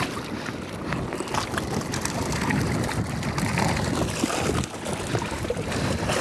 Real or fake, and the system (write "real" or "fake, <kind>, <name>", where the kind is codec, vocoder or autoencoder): real